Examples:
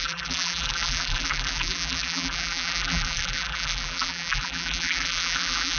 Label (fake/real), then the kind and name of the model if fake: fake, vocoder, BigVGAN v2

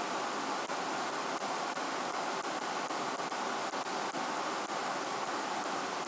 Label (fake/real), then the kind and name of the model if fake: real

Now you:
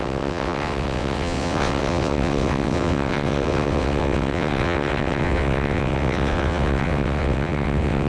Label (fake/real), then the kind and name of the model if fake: fake, vocoder, WaveNeXt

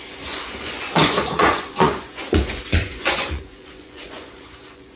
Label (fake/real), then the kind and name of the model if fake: fake, vocoder, Vocos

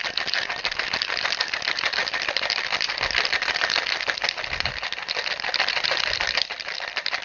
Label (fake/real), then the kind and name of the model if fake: fake, vocoder, BigVGAN v2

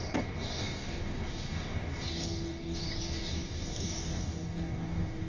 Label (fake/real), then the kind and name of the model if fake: fake, codec, DAC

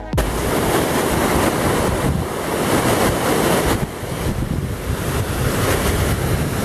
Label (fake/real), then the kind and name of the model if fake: real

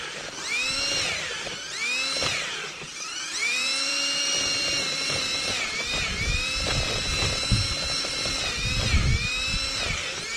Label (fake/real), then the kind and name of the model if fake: fake, vocoder, BigVGAN v2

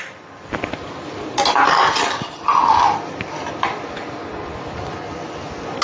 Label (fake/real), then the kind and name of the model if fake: real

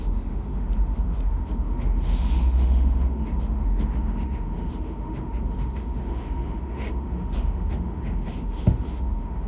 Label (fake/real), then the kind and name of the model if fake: fake, autoencoder, DAC-VAE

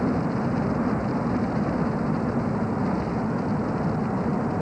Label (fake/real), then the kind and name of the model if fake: real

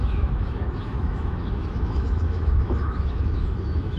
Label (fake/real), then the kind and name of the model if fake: fake, autoencoder, DAC-VAE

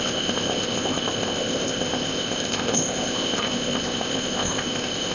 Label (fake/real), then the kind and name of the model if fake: fake, codec, ZipCodec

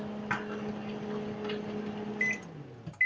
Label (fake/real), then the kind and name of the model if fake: real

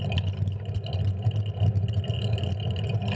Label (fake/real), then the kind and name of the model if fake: real